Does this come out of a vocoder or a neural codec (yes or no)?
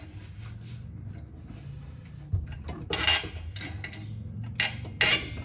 no